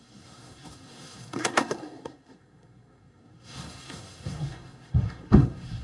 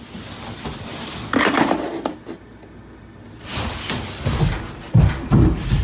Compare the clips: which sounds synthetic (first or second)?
first